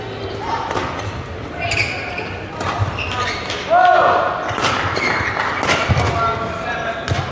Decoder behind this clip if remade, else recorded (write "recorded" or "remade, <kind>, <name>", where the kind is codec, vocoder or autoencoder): recorded